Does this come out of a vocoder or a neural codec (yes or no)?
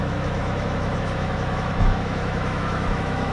yes